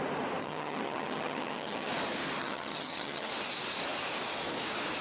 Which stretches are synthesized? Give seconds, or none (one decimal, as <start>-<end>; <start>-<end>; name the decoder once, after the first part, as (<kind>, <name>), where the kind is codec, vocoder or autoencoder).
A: 0.4-1.9 (vocoder, HiFi-GAN); 2.4-3.3